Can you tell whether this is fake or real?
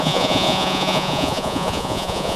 fake